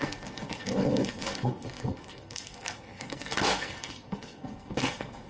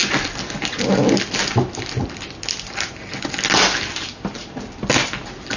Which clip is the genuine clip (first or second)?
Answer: second